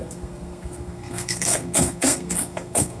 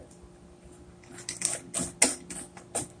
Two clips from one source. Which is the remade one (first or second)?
first